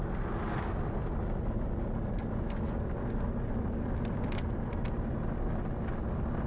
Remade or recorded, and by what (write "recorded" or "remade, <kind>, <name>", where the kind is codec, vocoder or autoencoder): recorded